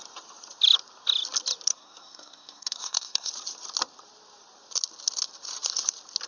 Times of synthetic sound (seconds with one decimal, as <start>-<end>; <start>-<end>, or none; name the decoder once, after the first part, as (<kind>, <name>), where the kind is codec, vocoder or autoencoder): 1.7-3.3 (codec, SNAC)